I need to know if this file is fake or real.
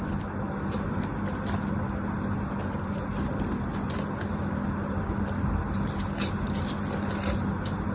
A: real